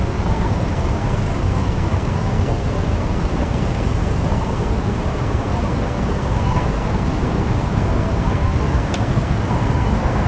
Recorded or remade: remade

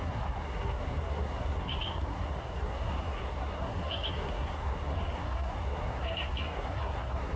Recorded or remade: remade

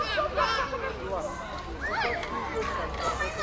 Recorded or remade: recorded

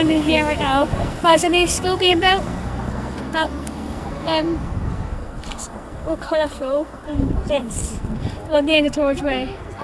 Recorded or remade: remade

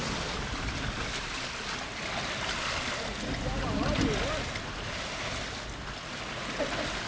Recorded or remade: recorded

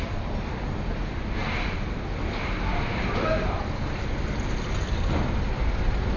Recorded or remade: recorded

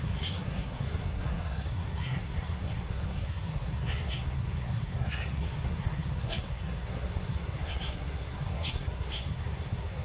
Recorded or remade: remade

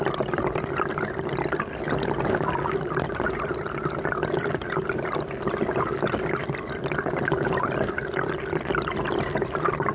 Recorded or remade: recorded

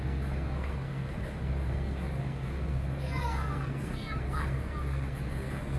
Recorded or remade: remade